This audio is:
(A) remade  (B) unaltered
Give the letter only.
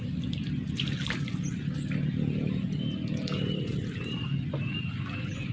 B